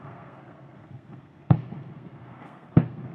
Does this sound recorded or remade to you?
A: remade